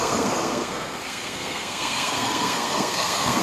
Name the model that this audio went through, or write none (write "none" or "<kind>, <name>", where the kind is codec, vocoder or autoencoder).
codec, SNAC